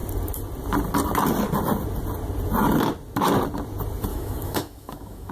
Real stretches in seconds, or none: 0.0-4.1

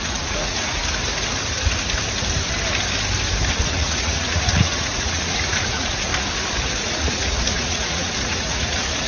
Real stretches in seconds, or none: 0.8-3.5; 6.1-6.8